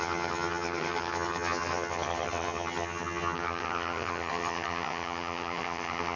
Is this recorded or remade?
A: remade